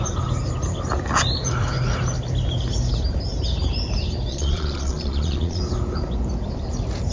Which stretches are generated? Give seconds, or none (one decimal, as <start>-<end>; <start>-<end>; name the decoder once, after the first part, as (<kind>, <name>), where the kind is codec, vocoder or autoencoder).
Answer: 4.3-5.6 (vocoder, Vocos)